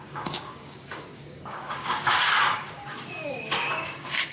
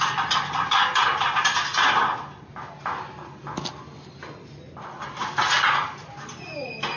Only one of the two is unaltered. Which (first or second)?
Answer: second